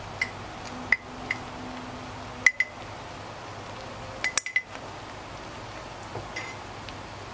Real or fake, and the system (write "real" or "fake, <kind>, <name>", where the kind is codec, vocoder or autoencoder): real